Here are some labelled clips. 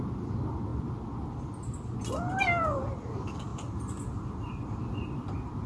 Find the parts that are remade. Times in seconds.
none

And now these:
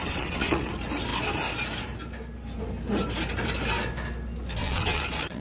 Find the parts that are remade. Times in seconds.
0.0-0.7; 4.6-5.4

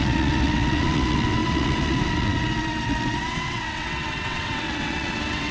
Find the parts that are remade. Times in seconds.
0.0-5.5

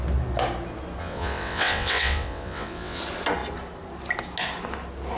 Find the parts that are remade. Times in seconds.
1.0-3.0

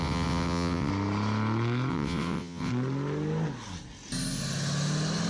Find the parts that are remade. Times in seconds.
0.0-0.9; 1.9-2.7

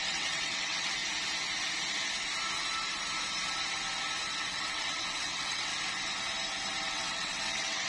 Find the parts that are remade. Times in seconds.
0.0-1.0; 4.4-5.7; 6.9-7.9